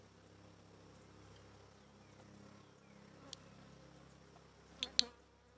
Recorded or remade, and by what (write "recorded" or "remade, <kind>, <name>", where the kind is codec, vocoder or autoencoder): recorded